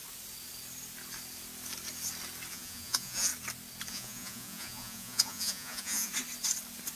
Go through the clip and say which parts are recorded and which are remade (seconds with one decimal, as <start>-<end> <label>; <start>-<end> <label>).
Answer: 0.0-2.5 recorded; 2.5-3.3 remade; 3.3-3.9 recorded; 3.9-6.1 remade; 6.1-7.0 recorded